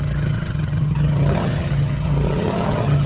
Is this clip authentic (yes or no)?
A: no